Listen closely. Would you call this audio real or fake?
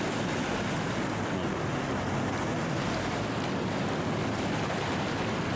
real